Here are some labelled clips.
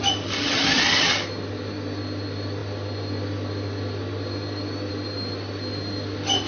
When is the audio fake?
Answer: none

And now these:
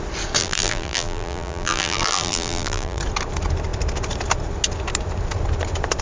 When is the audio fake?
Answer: 0.4-3.0 (vocoder, BigVGAN v2)

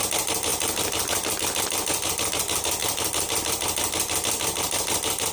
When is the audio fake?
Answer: 0.5-2.3 (vocoder, BigVGAN v2); 2.8-5.3

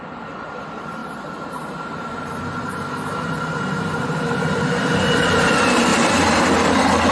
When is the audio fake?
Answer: 0.0-7.1 (vocoder, BigVGAN v2)

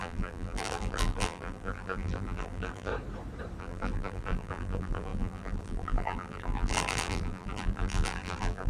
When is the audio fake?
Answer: 0.0-2.9 (vocoder, BigVGAN v2); 3.6-8.7

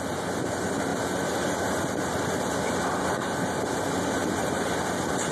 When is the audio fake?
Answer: 0.9-3.9 (vocoder, BigVGAN v2); 4.4-5.3

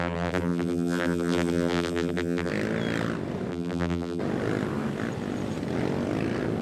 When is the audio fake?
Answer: 0.0-2.5 (vocoder, BigVGAN v2); 3.5-4.2

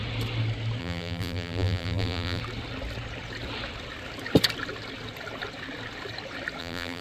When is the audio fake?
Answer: 0.8-2.4 (vocoder, BigVGAN v2); 6.6-7.0